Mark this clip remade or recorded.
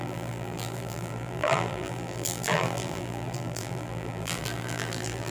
remade